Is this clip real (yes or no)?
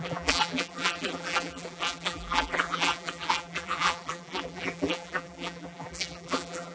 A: no